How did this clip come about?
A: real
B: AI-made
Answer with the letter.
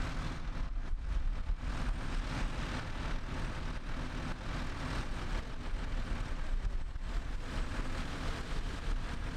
A